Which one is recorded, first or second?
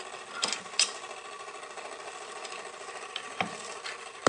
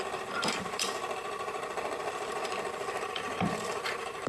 first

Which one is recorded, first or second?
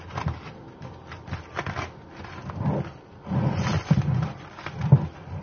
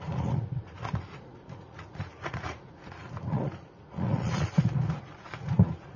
first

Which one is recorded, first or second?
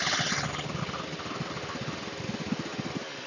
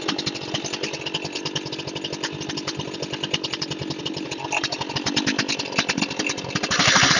first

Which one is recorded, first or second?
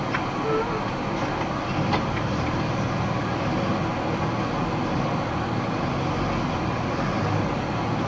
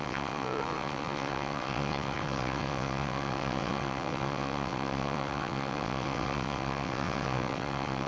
first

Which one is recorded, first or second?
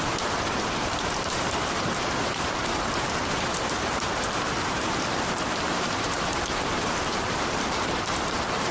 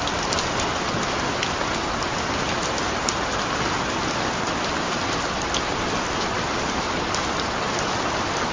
second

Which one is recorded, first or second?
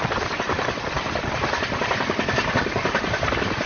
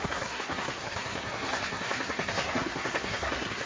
first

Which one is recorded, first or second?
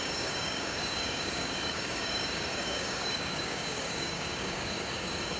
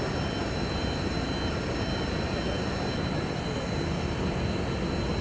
second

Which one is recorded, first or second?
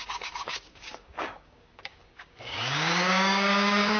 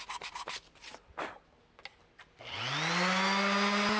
second